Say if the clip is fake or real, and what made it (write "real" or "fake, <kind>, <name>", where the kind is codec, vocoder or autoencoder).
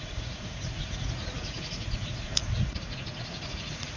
fake, vocoder, Vocos